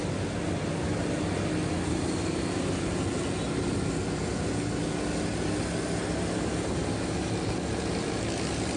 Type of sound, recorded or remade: recorded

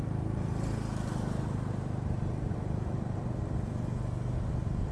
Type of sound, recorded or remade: recorded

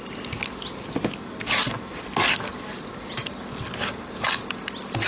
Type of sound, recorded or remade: recorded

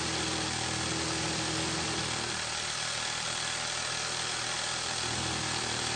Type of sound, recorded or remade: recorded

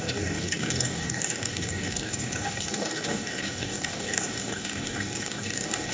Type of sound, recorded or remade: remade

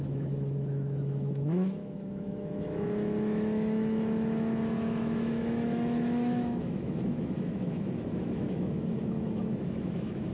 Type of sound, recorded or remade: remade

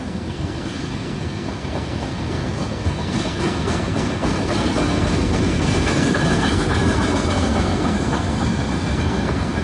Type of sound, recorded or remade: remade